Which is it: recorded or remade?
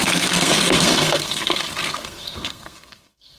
remade